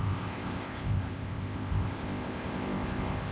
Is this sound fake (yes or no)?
yes